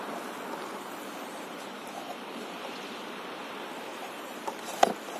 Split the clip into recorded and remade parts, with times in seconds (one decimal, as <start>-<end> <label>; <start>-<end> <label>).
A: 0.0-0.6 recorded; 0.6-2.7 remade; 2.7-3.9 recorded; 3.9-4.6 remade; 4.6-5.2 recorded

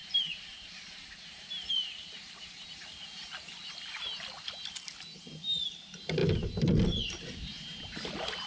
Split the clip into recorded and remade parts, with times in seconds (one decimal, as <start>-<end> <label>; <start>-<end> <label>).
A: 0.0-1.5 remade; 1.5-8.5 recorded

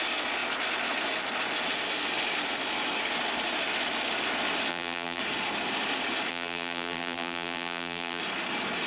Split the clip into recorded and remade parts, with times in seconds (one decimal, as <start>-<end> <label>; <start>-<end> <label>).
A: 0.0-4.7 recorded; 4.7-5.2 remade; 5.2-6.3 recorded; 6.3-8.2 remade; 8.2-8.9 recorded

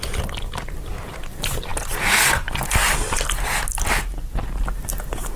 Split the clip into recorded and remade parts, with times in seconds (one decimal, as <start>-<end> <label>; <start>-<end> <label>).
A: 0.0-5.4 recorded

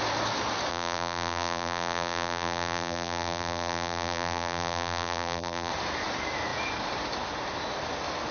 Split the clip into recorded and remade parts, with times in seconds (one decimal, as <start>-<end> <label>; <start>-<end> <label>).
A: 0.0-0.7 recorded; 0.7-5.7 remade; 5.7-8.3 recorded

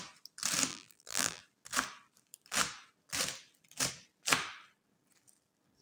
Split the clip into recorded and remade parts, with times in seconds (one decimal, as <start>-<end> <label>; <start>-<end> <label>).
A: 0.0-0.7 recorded; 0.7-1.4 remade; 1.4-5.8 recorded

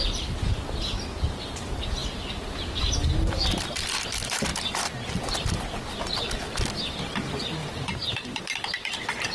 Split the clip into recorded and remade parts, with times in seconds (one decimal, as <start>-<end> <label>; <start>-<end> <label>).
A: 0.0-7.6 recorded; 7.6-8.4 remade; 8.4-9.3 recorded

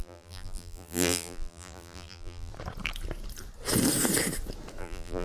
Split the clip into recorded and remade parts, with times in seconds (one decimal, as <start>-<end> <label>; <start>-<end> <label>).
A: 0.0-2.5 remade; 2.5-4.8 recorded; 4.8-5.2 remade